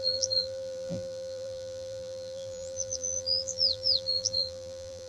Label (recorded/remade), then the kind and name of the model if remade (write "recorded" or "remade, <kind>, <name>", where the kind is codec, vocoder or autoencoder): remade, vocoder, BigVGAN v2